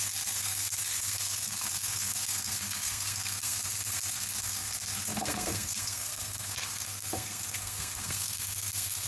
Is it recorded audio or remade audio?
remade